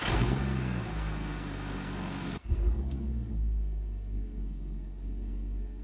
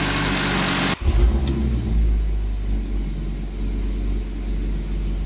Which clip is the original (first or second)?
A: second